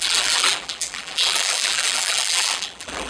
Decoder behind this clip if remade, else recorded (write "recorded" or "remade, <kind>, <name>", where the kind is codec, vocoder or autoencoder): remade, vocoder, BigVGAN v2